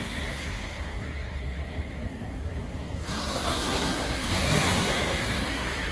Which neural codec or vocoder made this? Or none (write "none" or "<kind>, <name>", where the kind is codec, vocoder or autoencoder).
codec, SNAC